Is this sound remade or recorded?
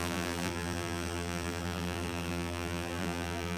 remade